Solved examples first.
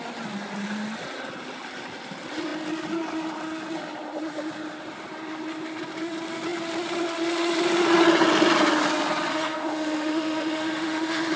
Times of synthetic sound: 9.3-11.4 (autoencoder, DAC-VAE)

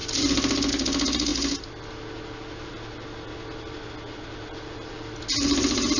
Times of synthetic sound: none

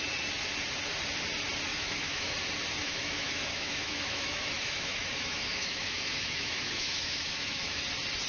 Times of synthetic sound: 1.7-2.3 (autoencoder, DAC-VAE); 2.8-7.8

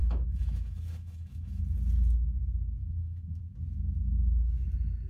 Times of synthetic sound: 0.0-1.6 (autoencoder, DAC-VAE); 2.8-3.4